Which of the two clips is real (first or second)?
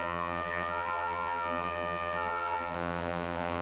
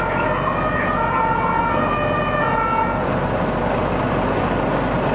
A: second